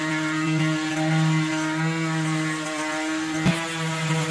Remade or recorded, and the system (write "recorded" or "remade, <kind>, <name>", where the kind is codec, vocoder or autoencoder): recorded